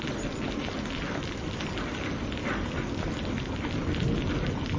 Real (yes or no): yes